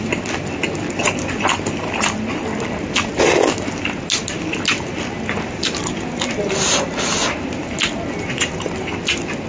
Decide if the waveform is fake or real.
real